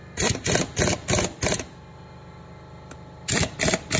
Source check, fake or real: real